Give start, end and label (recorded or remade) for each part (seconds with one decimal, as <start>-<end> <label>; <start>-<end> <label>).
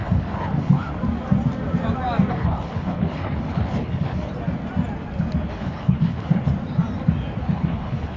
0.0-0.9 remade; 0.9-2.3 recorded; 2.3-4.3 remade; 4.3-5.5 recorded; 5.5-6.5 remade; 6.5-7.4 recorded; 7.4-8.2 remade